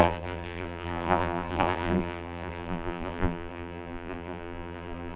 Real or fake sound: fake